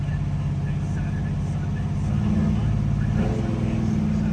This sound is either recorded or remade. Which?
recorded